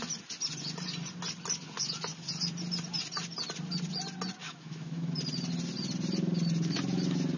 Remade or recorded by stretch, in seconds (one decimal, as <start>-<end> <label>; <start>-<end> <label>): 0.0-4.4 recorded; 4.4-5.1 remade; 5.1-7.4 recorded